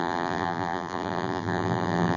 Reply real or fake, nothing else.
fake